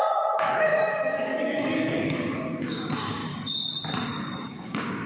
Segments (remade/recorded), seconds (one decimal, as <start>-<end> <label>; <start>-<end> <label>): 0.0-3.2 remade; 3.2-4.5 recorded; 4.5-5.1 remade